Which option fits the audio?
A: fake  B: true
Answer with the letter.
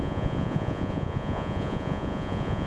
A